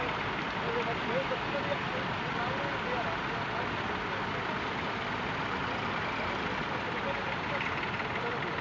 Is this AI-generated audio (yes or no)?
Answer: no